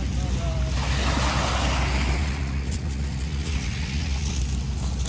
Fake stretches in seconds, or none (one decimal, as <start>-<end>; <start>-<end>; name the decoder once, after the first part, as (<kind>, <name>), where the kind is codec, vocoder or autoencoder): 2.2-4.4 (vocoder, Vocos)